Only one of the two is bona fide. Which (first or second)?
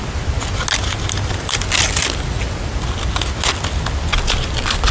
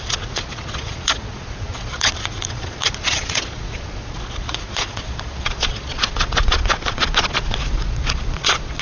first